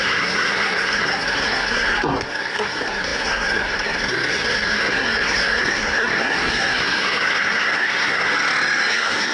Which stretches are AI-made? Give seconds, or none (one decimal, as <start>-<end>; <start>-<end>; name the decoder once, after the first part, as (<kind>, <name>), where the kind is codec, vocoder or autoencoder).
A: 0.0-8.3 (codec, SNAC); 8.9-9.3